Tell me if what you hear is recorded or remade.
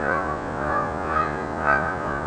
remade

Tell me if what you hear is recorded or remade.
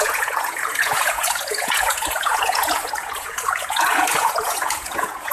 remade